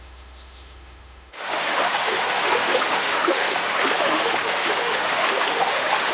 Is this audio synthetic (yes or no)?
yes